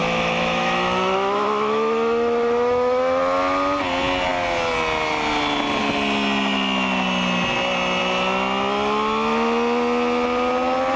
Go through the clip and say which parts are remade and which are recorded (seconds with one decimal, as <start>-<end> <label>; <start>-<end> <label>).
0.0-3.2 remade; 3.2-11.0 recorded